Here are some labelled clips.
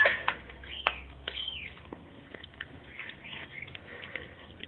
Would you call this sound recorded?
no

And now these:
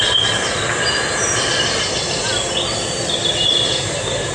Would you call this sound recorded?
yes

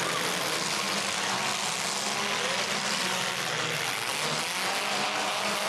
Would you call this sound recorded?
yes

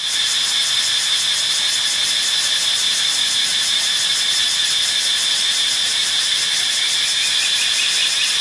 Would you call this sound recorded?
yes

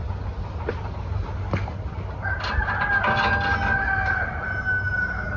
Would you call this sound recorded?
yes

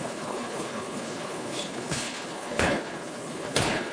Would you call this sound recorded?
no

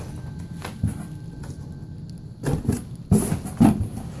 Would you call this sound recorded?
yes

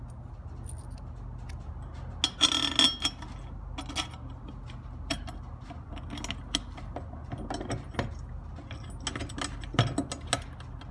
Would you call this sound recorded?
yes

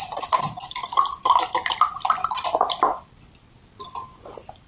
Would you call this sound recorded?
yes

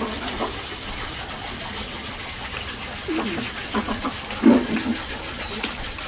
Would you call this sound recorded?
yes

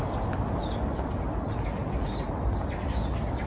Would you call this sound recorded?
yes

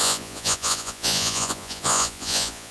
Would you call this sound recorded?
no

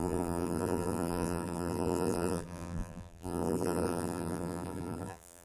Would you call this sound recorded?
no